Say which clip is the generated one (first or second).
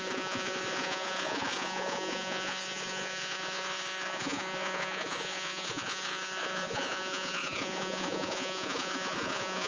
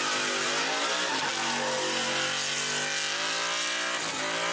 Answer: first